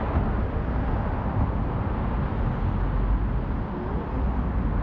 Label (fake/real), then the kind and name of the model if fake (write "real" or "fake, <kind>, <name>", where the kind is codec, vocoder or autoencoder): real